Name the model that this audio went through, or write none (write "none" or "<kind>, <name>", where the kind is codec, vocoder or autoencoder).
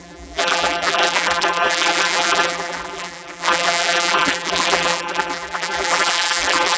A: vocoder, BigVGAN v2